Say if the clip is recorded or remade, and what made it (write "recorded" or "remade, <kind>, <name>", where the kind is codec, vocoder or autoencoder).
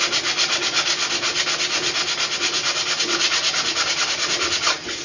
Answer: recorded